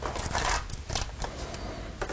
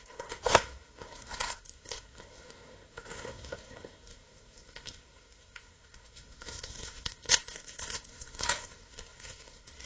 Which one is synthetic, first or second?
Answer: second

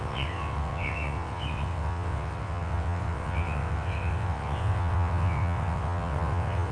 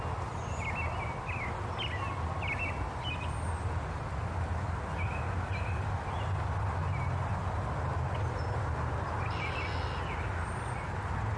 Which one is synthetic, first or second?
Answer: first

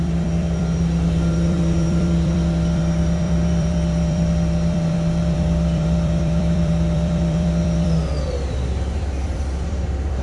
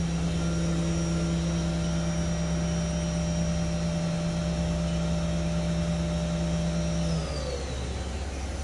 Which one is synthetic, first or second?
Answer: first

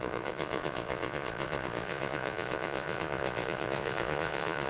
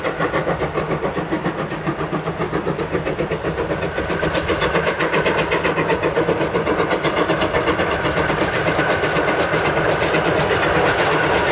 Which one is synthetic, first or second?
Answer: first